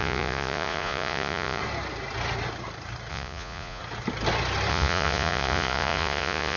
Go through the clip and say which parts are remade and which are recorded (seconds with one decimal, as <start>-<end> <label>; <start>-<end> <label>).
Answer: 0.0-1.6 remade; 1.6-3.1 recorded; 3.1-3.8 remade; 3.8-4.7 recorded; 4.7-6.6 remade